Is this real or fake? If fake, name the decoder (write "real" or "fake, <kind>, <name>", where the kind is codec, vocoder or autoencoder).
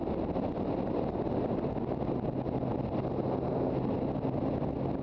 real